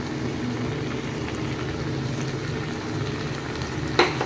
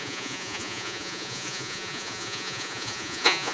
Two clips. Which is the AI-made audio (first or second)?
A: second